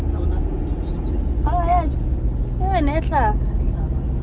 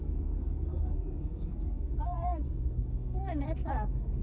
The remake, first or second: second